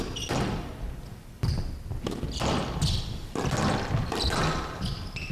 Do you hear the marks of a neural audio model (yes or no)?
no